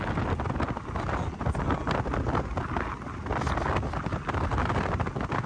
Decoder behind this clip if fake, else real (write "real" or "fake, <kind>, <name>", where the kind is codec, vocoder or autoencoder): real